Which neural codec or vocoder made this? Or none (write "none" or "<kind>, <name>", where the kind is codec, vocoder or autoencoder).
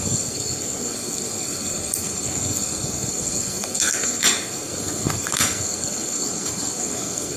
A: codec, SNAC